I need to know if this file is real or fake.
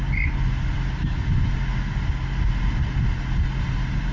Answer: real